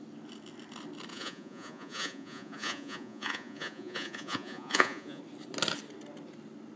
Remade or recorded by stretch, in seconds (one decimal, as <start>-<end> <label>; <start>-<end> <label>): 0.0-1.1 recorded; 1.1-5.2 remade; 5.2-6.8 recorded